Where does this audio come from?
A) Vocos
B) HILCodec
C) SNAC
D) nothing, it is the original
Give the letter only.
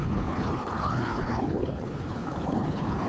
B